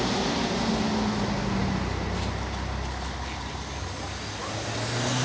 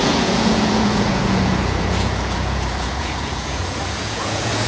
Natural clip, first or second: first